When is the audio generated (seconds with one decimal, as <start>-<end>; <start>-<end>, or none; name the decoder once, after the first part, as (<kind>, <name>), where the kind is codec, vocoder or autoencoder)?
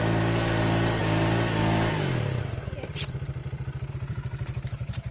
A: 0.0-1.0 (vocoder, BigVGAN v2); 2.4-5.1